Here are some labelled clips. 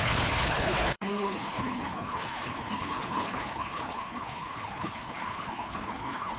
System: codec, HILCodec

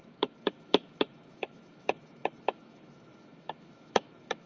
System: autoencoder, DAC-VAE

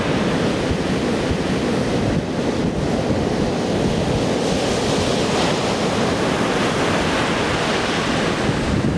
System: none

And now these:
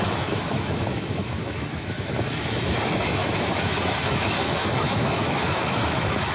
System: autoencoder, DAC-VAE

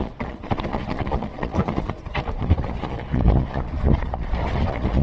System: vocoder, Vocos